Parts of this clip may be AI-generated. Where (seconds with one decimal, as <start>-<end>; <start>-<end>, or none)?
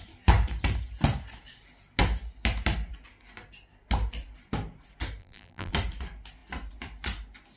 5.2-5.7